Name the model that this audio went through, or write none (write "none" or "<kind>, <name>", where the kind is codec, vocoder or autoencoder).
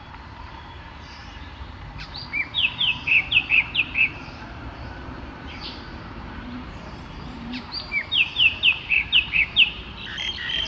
vocoder, BigVGAN v2